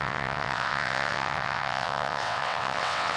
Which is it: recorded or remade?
remade